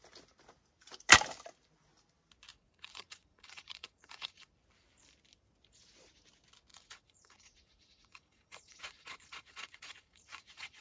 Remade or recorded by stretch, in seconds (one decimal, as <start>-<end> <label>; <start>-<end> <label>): 0.0-2.5 recorded; 2.5-4.5 remade; 4.5-6.7 recorded; 6.7-10.8 remade